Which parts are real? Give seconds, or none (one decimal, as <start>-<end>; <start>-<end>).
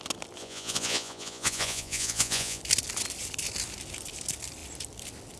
0.0-0.4; 2.6-5.4